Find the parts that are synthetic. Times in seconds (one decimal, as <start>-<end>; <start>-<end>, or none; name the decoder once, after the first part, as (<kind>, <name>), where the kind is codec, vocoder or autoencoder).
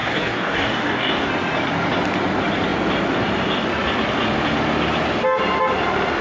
0.0-1.3 (codec, DAC)